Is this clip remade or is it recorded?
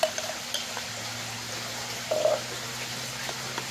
recorded